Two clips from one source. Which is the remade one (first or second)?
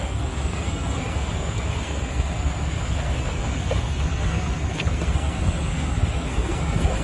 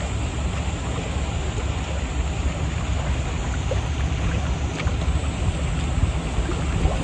first